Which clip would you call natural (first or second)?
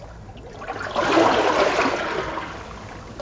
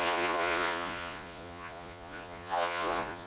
first